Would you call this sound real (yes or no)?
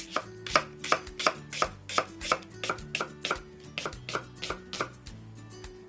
yes